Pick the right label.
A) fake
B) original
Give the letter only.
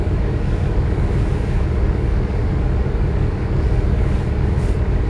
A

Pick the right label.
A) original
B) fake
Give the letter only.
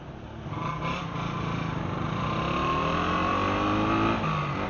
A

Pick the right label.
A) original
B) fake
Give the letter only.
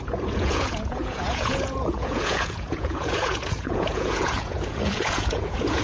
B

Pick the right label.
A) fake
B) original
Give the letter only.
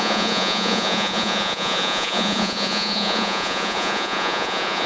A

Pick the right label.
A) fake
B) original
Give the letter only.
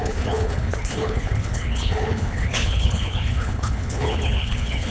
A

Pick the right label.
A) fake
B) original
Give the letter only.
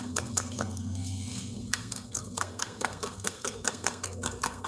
A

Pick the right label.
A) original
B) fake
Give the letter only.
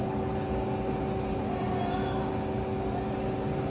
A